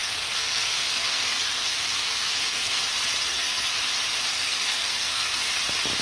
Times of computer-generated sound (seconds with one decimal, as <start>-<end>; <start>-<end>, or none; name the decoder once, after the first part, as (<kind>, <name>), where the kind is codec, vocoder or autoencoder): 0.0-2.8 (codec, SNAC); 3.3-3.8; 4.3-5.5